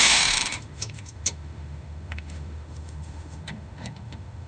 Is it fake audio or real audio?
fake